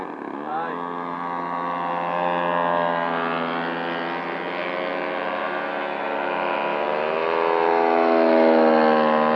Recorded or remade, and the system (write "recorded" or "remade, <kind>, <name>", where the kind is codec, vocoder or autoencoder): recorded